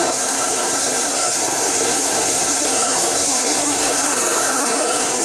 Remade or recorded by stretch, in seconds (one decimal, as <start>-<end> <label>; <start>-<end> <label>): 0.0-5.2 remade